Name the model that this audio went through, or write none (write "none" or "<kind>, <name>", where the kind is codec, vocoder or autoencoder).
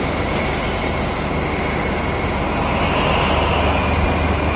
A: none